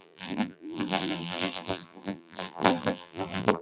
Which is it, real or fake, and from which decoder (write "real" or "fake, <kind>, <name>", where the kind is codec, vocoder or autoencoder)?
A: fake, vocoder, BigVGAN v2